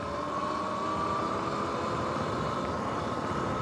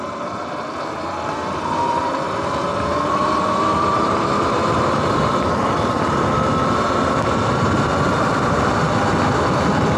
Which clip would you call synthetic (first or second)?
second